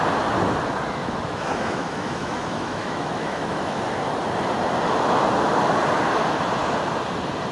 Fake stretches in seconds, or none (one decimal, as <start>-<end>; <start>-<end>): 1.0-3.8

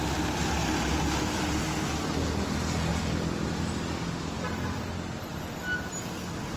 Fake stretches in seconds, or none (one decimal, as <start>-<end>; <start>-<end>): 0.6-1.5; 2.9-4.8

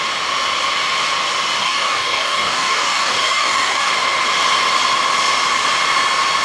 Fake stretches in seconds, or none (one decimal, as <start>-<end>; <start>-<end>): 1.6-3.9